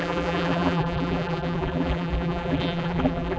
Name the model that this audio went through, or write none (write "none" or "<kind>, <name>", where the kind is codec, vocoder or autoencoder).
vocoder, BigVGAN v2